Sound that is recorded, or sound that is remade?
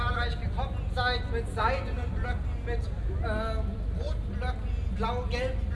recorded